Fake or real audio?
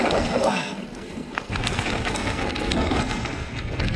fake